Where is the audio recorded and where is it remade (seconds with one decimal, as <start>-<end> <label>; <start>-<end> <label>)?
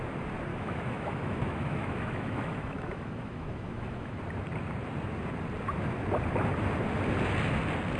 0.0-0.5 recorded; 0.5-4.2 remade; 4.2-8.0 recorded